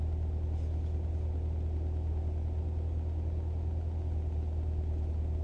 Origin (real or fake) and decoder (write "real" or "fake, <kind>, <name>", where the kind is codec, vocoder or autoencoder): real